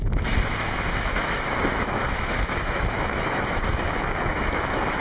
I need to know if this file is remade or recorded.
remade